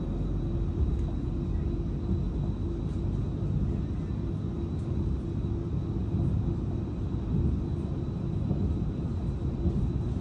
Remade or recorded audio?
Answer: recorded